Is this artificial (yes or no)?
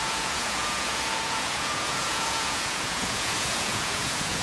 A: yes